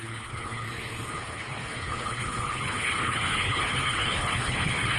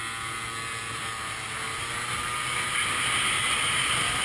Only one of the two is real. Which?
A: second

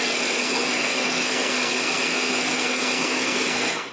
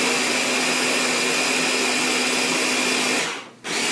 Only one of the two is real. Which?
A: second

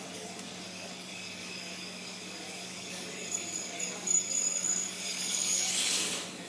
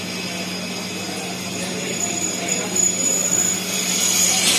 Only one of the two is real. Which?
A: second